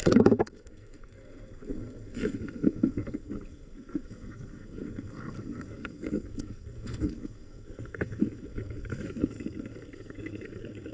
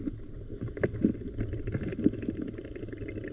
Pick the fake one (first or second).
first